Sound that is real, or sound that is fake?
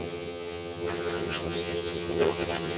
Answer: fake